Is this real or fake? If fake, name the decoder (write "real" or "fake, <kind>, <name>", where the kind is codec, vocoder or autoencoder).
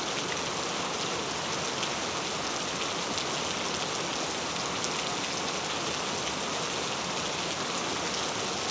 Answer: real